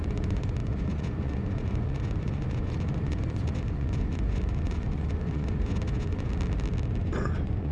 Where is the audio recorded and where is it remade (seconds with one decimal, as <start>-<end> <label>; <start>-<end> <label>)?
0.0-6.3 remade; 6.3-7.0 recorded; 7.0-7.7 remade

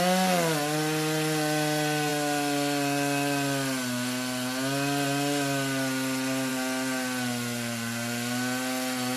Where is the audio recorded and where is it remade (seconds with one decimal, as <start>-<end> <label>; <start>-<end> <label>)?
0.0-9.2 recorded